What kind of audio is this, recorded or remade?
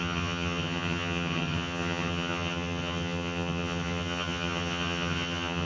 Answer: remade